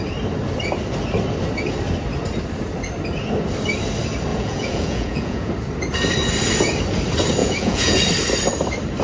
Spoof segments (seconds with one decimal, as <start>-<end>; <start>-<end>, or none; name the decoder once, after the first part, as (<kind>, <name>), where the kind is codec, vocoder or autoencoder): 4.3-5.5 (vocoder, Vocos); 7.4-8.0